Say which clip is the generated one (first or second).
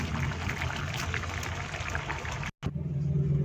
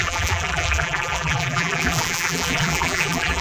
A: second